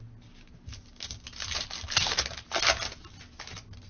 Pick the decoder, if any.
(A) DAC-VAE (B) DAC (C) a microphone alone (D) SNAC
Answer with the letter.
C